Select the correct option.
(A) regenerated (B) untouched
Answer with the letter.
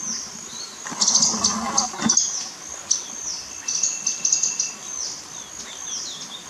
B